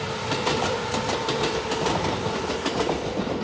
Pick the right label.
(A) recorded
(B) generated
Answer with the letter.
B